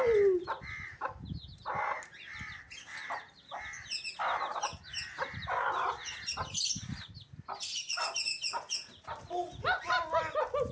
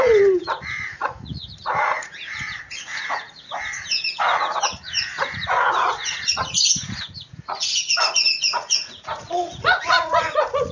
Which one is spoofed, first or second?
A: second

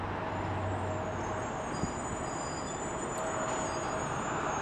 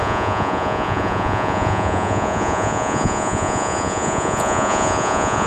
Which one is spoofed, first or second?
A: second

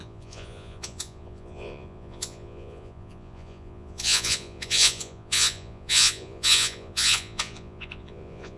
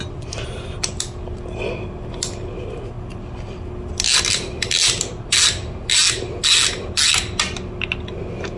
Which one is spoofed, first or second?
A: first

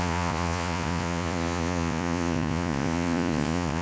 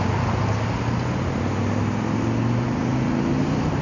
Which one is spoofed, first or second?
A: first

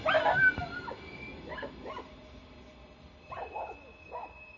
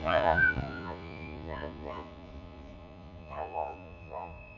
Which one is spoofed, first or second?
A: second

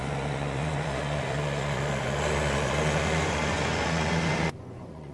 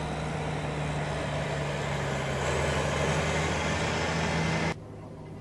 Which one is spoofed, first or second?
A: first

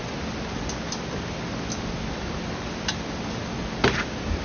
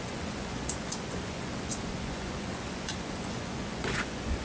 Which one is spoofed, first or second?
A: second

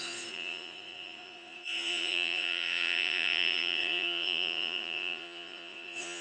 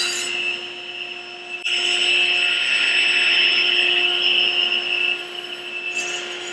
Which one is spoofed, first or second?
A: first